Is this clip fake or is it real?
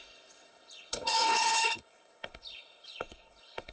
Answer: fake